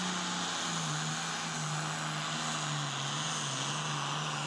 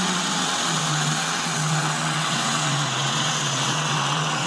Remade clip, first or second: second